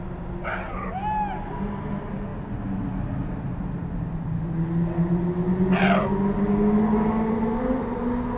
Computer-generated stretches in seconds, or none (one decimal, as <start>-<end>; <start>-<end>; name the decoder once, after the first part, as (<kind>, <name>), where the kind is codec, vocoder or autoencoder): none